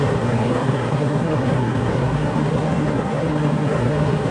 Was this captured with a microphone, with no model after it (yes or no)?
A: no